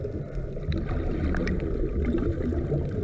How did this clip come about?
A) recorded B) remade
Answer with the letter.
A